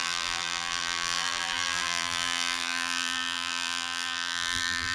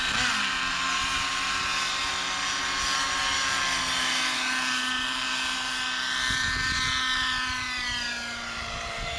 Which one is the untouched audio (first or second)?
second